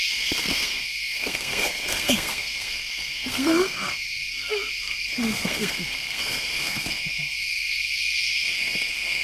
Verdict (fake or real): fake